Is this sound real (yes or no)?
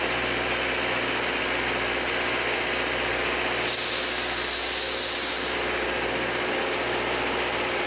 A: yes